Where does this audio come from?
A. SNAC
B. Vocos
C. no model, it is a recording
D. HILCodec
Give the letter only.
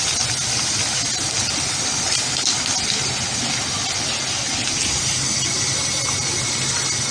C